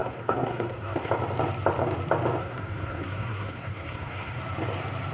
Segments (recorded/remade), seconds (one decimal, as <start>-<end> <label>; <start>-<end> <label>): 0.0-1.1 remade; 1.1-2.4 recorded; 2.4-4.4 remade; 4.4-5.1 recorded

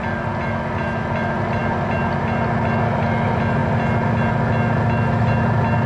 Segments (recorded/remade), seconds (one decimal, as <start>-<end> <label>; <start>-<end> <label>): 0.0-5.9 recorded

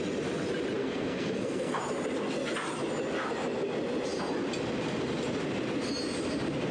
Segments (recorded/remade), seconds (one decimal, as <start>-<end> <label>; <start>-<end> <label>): 0.0-0.8 recorded; 0.8-1.8 remade; 1.8-6.7 recorded

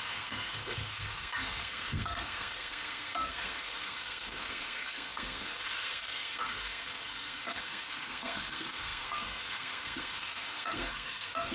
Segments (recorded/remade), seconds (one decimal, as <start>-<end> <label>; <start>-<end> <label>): 0.0-11.5 remade

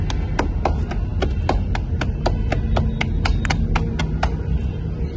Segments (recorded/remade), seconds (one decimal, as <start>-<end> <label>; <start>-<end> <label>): 0.0-5.2 recorded

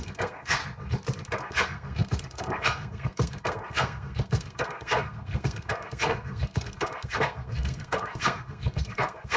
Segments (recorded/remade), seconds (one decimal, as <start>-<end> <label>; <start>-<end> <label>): 0.0-0.6 remade; 0.6-1.4 recorded; 1.4-9.4 remade

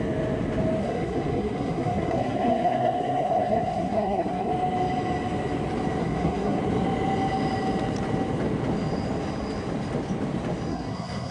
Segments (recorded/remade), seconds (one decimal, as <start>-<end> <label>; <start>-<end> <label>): 0.0-0.8 recorded; 0.8-4.5 remade; 4.5-6.0 recorded; 6.0-6.6 remade; 6.6-10.7 recorded; 10.7-11.3 remade

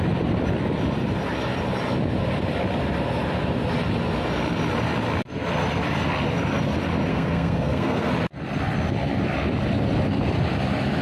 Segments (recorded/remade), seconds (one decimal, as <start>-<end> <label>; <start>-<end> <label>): 0.0-7.1 recorded; 7.1-8.1 remade; 8.1-11.0 recorded